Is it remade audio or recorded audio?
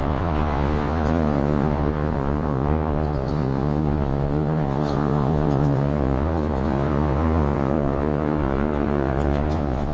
remade